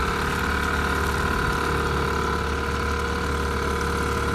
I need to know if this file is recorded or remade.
recorded